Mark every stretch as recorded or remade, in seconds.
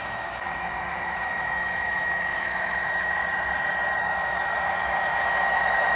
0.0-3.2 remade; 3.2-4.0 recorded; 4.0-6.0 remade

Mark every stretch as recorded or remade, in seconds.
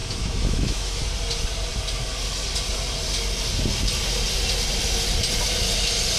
0.0-1.0 remade; 1.0-6.2 recorded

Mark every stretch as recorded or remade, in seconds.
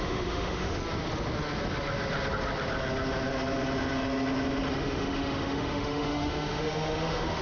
0.0-0.8 remade; 0.8-4.7 recorded; 4.7-7.4 remade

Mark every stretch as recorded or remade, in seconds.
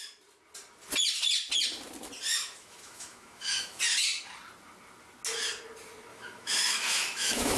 0.0-2.4 recorded; 2.4-3.8 remade; 3.8-6.1 recorded; 6.1-7.6 remade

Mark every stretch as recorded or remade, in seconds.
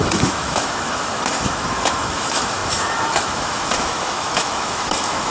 0.0-5.3 remade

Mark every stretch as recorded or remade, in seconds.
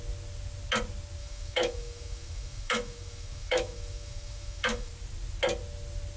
0.0-1.2 recorded; 1.2-4.9 remade; 4.9-6.2 recorded